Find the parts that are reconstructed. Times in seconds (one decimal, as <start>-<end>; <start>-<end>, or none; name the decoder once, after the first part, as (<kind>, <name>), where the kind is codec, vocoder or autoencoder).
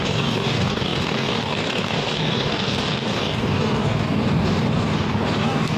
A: 0.0-5.8 (codec, DAC)